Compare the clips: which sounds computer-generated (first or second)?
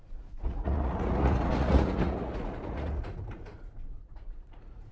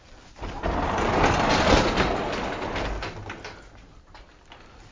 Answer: first